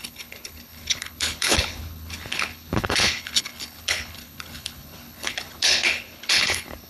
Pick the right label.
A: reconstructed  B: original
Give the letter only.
A